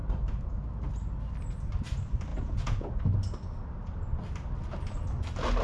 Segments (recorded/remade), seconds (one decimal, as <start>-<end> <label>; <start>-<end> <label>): 0.0-2.3 recorded; 2.3-3.0 remade; 3.0-5.6 recorded